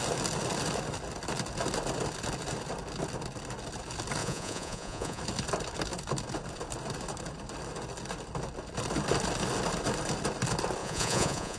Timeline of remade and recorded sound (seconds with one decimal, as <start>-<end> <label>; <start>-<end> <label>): 0.0-4.2 recorded; 4.2-5.2 remade; 5.2-10.8 recorded; 10.8-11.6 remade